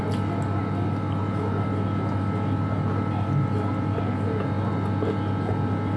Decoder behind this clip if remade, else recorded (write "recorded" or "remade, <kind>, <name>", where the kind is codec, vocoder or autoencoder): recorded